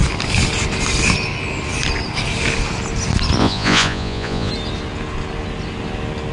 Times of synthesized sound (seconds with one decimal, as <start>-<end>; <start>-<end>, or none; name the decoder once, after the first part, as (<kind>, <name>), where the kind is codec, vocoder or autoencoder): 3.4-4.5 (vocoder, Vocos)